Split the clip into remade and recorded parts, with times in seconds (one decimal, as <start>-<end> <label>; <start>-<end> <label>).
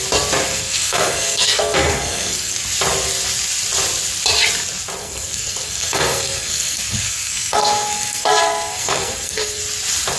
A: 0.0-0.5 recorded; 0.5-2.5 remade; 2.5-5.0 recorded; 5.0-9.6 remade; 9.6-10.2 recorded